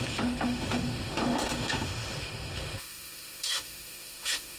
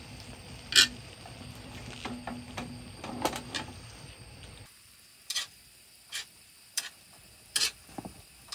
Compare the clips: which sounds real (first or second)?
second